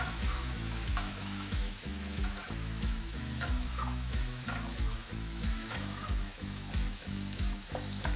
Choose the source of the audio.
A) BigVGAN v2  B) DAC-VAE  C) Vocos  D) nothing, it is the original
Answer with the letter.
B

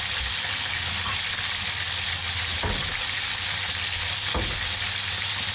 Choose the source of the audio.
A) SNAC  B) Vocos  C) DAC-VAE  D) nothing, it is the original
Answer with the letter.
D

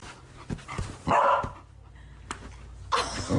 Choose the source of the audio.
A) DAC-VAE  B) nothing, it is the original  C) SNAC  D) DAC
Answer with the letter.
B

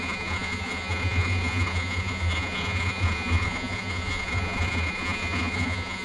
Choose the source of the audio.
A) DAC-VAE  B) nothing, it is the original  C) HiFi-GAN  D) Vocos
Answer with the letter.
D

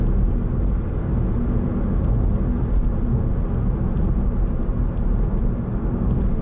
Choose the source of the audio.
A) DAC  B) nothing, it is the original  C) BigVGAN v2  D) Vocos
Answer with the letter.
B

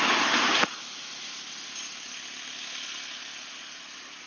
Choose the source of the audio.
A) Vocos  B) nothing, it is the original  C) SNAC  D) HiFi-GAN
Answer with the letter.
B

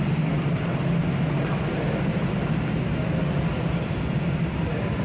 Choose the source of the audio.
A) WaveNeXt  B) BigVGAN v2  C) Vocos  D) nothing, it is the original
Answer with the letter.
D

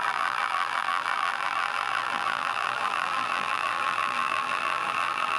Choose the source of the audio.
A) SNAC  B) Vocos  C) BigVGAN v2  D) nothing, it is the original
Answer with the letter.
C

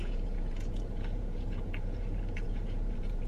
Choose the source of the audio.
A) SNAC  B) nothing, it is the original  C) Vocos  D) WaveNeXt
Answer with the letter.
C